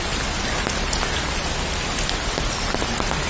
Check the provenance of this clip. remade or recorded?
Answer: recorded